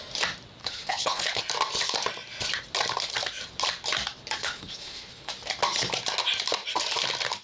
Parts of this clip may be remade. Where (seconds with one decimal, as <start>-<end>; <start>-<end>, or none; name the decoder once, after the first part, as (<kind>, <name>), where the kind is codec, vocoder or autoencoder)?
0.6-1.4 (codec, HILCodec); 4.4-5.3